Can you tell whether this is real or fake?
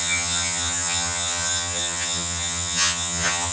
fake